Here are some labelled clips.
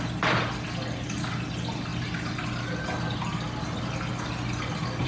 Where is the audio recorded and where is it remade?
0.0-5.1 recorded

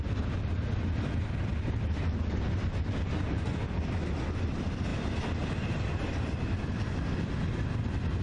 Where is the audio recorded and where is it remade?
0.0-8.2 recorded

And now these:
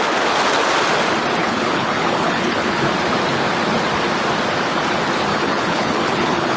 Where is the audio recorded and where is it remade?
0.0-1.4 recorded; 1.4-2.9 remade; 2.9-5.3 recorded; 5.3-6.6 remade

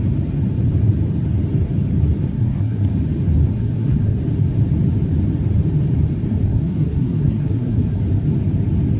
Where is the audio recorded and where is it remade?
0.0-2.3 recorded; 2.3-2.9 remade; 2.9-3.5 recorded; 3.5-4.2 remade; 4.2-6.3 recorded; 6.3-8.0 remade; 8.0-9.0 recorded

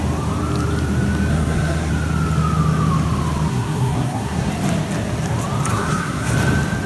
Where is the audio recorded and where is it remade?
0.0-1.3 recorded; 1.3-1.9 remade; 1.9-3.5 recorded; 3.5-4.5 remade; 4.5-5.7 recorded; 5.7-6.3 remade; 6.3-6.9 recorded

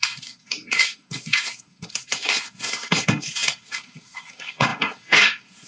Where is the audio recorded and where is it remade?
0.0-5.7 remade